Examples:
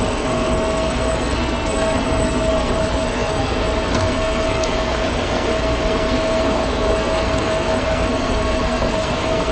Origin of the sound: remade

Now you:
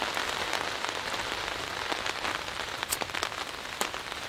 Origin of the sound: recorded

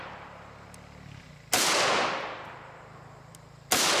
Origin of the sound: recorded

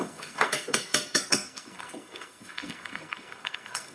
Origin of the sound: remade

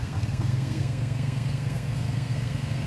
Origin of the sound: remade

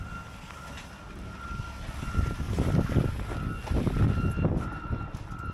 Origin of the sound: recorded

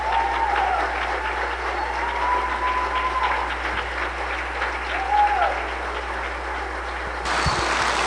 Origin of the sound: recorded